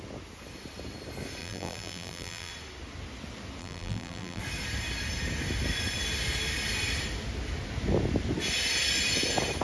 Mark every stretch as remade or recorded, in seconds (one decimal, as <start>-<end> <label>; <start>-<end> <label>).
0.0-1.4 recorded; 1.4-2.5 remade; 2.5-3.6 recorded; 3.6-4.4 remade; 4.4-9.6 recorded